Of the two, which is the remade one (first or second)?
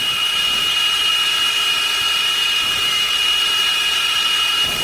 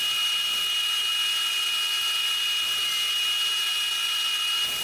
first